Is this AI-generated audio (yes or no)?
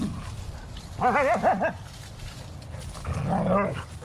no